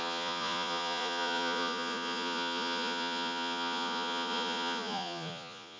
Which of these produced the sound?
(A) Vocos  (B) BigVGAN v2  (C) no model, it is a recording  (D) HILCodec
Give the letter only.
A